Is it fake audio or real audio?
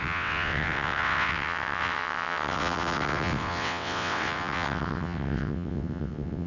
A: fake